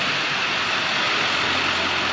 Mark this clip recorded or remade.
recorded